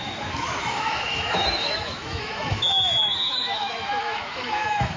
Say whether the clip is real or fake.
fake